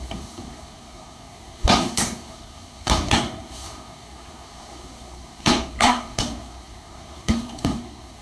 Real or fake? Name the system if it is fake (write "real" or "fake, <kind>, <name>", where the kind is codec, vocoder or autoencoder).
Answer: fake, codec, SNAC